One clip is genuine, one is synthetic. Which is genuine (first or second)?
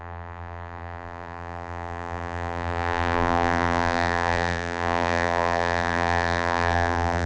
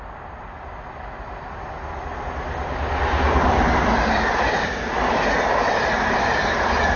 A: second